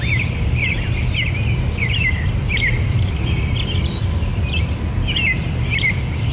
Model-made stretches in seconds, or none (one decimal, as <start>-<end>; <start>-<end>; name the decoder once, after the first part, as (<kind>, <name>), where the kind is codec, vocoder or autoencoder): 0.0-4.3 (vocoder, BigVGAN v2); 5.5-6.3